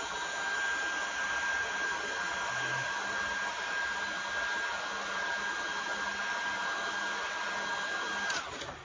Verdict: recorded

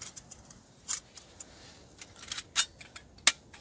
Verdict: recorded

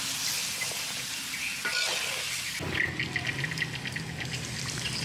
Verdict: recorded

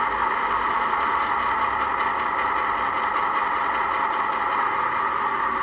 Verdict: recorded